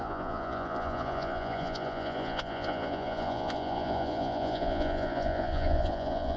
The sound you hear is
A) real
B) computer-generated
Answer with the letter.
B